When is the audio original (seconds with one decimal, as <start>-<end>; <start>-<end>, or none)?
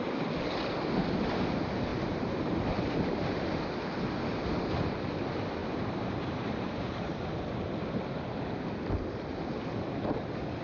0.0-1.9; 3.5-5.6; 7.4-10.6